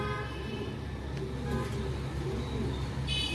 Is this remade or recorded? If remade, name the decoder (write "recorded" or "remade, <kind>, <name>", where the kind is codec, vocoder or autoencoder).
recorded